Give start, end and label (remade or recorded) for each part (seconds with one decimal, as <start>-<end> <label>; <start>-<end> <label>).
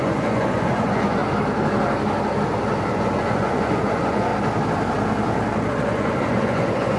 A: 0.0-1.2 remade; 1.2-2.9 recorded; 2.9-4.3 remade; 4.3-5.7 recorded; 5.7-7.0 remade